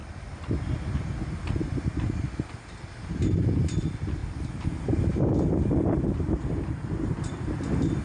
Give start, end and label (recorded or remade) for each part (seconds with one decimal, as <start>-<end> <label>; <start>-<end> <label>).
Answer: 0.0-0.6 remade; 0.6-4.2 recorded; 4.2-8.0 remade